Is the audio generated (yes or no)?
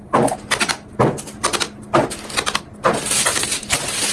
no